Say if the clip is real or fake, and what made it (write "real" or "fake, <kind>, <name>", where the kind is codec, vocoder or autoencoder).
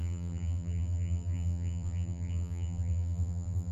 fake, vocoder, BigVGAN v2